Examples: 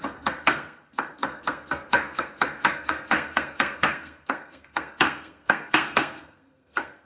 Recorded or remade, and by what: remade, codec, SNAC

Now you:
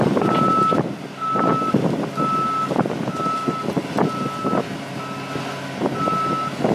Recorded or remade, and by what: recorded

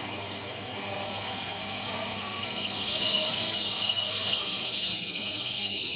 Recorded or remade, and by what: remade, codec, SNAC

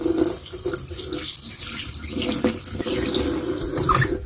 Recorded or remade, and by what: recorded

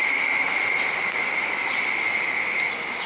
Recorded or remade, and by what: recorded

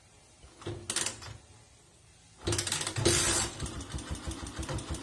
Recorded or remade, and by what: recorded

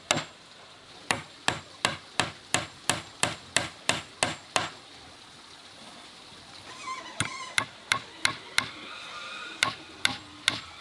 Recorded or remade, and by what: recorded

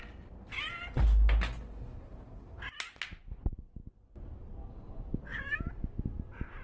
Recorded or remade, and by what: recorded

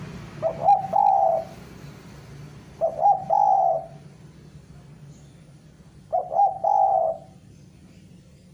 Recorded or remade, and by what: recorded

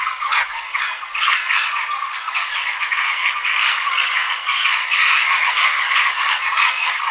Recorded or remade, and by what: remade, codec, SNAC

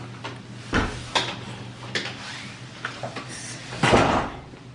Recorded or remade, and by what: recorded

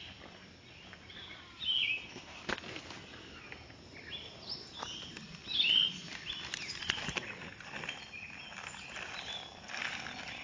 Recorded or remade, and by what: recorded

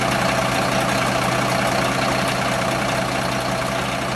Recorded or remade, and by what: recorded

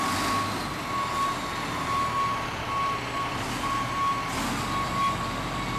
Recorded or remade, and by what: recorded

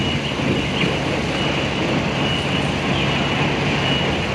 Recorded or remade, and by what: recorded